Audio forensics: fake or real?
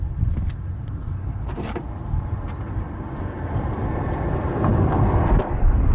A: fake